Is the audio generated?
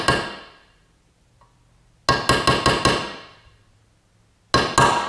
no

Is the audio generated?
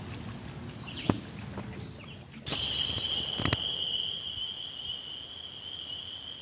no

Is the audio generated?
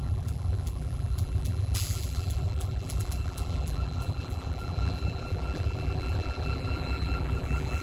yes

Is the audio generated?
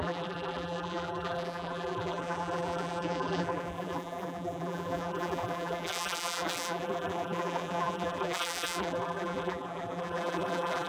yes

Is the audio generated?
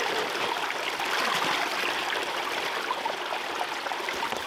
yes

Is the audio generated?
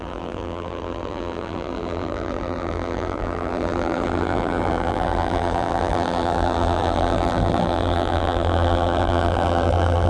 yes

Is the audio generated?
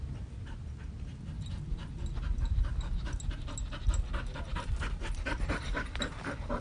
no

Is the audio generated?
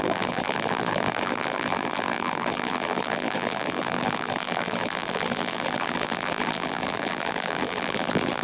yes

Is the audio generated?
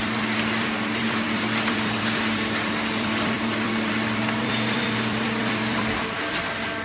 yes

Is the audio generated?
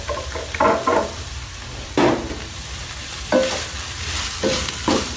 yes